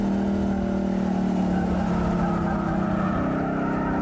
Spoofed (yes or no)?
no